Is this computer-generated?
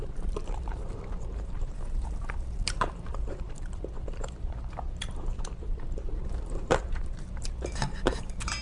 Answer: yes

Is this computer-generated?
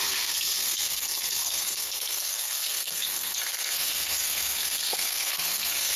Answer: yes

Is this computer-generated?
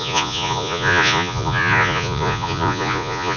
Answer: yes